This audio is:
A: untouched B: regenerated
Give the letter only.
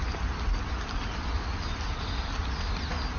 A